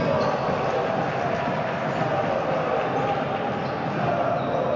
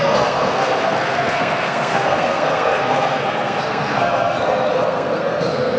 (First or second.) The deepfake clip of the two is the second